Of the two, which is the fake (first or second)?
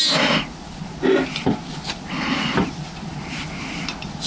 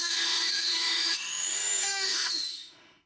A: second